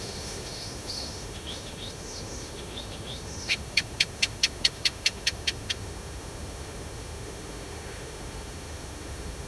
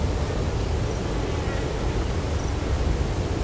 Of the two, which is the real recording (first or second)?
second